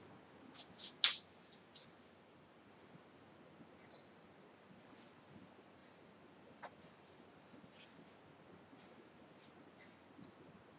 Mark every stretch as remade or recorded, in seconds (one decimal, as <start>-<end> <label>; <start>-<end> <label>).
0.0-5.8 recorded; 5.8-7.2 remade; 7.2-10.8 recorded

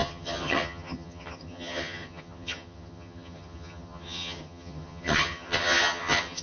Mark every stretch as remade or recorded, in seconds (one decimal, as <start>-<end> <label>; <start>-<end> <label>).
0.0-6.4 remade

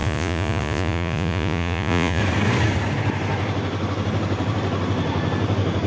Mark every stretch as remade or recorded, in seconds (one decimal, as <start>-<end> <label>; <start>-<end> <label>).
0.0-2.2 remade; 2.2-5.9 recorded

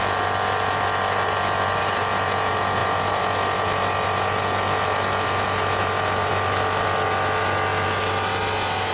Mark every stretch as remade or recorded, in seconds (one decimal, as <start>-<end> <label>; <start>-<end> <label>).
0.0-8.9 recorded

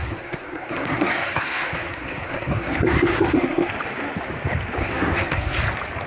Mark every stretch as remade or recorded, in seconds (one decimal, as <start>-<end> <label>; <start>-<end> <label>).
0.0-3.7 remade; 3.7-4.8 recorded; 4.8-5.6 remade; 5.6-6.1 recorded

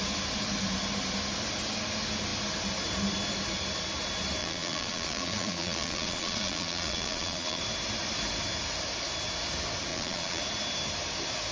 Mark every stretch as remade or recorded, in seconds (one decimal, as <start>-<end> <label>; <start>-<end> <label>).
0.0-4.4 recorded; 4.4-7.6 remade; 7.6-9.9 recorded; 9.9-10.4 remade; 10.4-11.5 recorded